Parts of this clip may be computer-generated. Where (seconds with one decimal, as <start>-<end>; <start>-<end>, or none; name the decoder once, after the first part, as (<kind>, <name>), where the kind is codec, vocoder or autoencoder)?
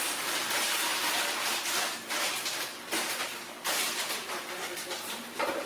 0.0-4.6 (vocoder, BigVGAN v2); 5.2-5.7